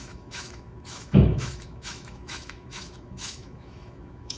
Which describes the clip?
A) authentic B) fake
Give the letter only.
B